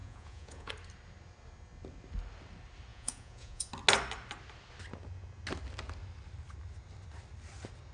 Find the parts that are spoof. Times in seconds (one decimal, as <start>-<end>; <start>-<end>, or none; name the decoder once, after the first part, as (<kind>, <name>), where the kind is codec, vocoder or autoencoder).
0.0-0.7 (vocoder, Vocos); 2.9-3.7